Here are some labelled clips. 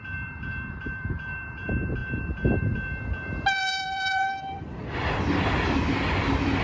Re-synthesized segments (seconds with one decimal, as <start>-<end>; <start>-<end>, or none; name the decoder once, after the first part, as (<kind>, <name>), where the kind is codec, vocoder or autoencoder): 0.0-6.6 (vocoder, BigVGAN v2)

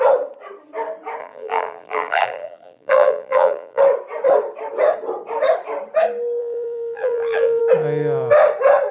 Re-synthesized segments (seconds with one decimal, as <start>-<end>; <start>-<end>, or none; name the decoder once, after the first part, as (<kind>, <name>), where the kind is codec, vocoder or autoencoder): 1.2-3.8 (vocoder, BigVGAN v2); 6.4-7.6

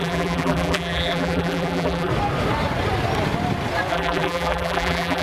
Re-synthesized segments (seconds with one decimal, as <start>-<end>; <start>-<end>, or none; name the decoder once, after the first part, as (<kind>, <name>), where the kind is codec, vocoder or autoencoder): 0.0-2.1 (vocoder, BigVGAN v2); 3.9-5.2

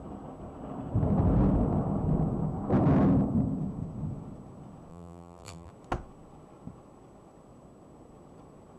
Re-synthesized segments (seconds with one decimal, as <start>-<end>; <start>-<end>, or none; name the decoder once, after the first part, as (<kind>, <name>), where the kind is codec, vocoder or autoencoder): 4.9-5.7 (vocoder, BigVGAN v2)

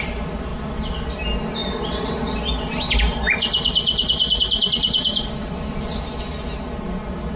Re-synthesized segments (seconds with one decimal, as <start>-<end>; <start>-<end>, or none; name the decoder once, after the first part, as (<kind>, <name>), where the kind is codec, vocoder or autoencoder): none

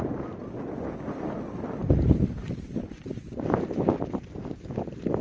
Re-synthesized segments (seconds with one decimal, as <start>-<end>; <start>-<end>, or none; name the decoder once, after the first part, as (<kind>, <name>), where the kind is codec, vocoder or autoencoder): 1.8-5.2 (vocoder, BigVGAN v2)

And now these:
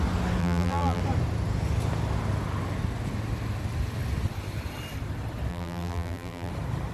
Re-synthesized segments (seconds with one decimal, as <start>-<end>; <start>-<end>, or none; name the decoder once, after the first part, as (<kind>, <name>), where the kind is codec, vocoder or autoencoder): 0.4-1.0 (vocoder, BigVGAN v2); 5.5-6.5